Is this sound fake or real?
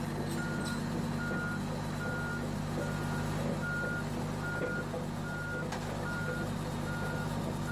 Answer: real